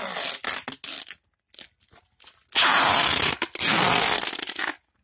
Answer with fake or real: real